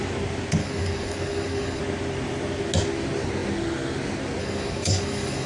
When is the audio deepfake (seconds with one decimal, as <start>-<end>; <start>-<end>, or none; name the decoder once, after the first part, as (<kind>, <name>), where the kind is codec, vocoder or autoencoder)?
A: 0.6-1.8 (codec, DAC); 4.4-5.5